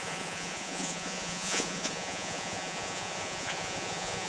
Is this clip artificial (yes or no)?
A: yes